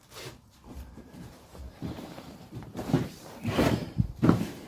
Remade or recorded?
remade